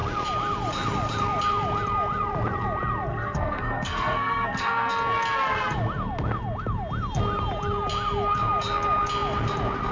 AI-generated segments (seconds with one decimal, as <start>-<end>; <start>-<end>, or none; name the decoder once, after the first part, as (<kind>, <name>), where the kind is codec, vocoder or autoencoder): 3.1-4.9 (codec, SNAC)